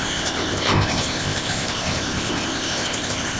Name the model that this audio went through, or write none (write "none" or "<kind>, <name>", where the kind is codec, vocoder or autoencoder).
codec, ZipCodec